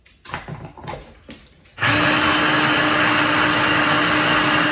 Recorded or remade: recorded